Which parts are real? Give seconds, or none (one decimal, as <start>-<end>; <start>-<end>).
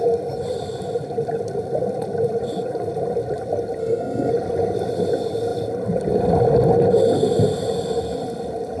0.0-3.8; 4.3-8.8